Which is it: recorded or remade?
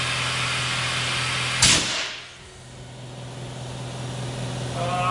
recorded